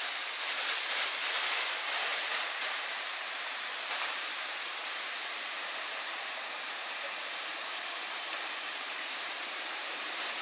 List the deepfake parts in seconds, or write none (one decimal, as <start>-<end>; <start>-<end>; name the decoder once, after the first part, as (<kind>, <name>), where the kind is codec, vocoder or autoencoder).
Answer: 0.0-7.5 (vocoder, BigVGAN v2); 8.7-10.4